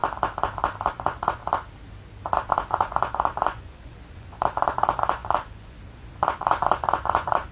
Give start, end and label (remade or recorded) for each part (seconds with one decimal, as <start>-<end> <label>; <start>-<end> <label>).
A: 0.0-0.9 recorded; 0.9-1.4 remade; 1.4-2.5 recorded; 2.5-7.5 remade

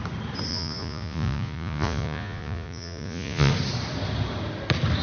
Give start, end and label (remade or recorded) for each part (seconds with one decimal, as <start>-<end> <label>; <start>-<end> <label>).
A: 0.0-0.5 recorded; 0.5-3.5 remade; 3.5-5.0 recorded

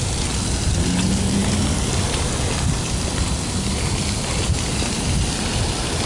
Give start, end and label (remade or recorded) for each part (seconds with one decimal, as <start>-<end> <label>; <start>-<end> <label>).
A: 0.0-6.1 recorded

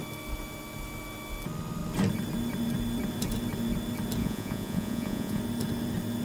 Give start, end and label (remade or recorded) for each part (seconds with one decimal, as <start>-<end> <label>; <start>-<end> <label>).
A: 0.0-4.2 recorded; 4.2-5.4 remade; 5.4-6.2 recorded